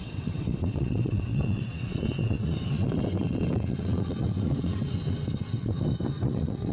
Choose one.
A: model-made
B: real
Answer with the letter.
A